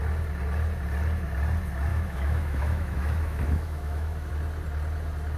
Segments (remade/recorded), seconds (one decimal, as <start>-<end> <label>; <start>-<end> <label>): 0.0-1.9 recorded; 1.9-4.3 remade; 4.3-5.4 recorded